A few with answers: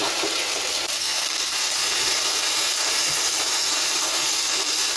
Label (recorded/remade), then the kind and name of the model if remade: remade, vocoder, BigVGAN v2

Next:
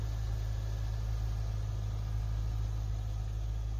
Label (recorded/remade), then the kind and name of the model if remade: recorded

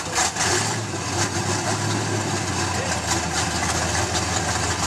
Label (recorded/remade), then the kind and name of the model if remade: recorded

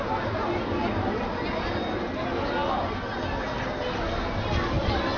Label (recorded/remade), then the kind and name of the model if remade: recorded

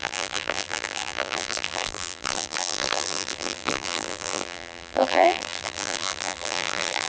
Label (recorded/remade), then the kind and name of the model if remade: remade, vocoder, BigVGAN v2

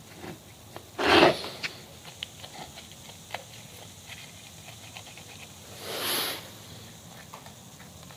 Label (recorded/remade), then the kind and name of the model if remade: recorded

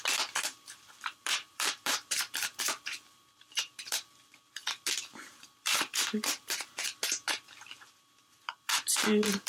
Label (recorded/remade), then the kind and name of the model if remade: remade, vocoder, BigVGAN v2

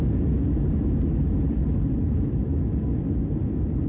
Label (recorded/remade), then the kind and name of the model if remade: recorded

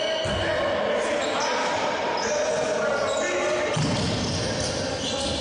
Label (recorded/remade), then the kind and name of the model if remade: recorded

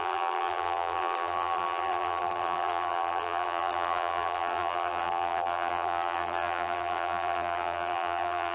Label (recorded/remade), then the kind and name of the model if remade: remade, vocoder, BigVGAN v2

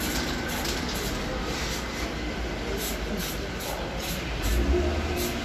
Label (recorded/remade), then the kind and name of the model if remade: recorded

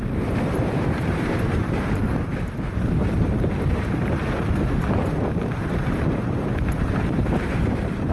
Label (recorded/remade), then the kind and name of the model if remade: remade, vocoder, BigVGAN v2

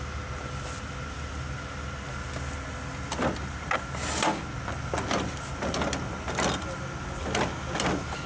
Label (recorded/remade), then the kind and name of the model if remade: recorded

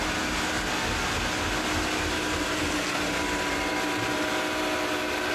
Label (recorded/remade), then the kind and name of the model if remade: recorded